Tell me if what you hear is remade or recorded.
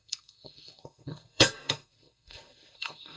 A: remade